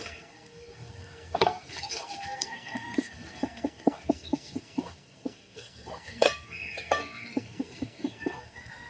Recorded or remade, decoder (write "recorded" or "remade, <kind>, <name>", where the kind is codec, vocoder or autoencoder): remade, codec, SNAC